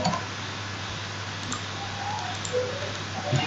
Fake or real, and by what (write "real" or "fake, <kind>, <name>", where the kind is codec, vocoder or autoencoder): real